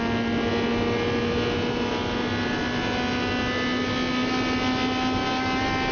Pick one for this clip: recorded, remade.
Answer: recorded